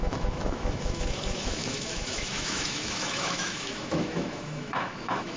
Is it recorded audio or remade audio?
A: remade